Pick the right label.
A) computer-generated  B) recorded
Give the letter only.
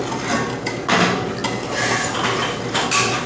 B